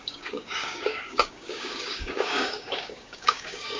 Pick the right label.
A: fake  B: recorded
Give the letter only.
A